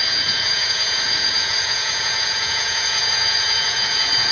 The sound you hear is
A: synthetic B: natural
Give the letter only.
A